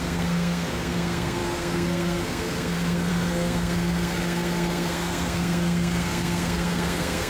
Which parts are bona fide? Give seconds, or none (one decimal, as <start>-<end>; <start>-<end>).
none